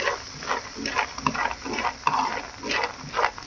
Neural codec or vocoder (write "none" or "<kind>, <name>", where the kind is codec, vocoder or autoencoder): none